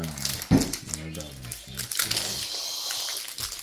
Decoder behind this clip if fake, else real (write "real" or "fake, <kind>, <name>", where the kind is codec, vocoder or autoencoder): real